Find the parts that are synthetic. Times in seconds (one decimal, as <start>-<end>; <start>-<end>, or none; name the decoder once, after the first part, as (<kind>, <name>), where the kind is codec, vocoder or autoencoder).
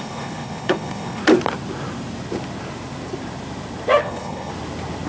0.0-1.2 (codec, HILCodec); 4.0-4.5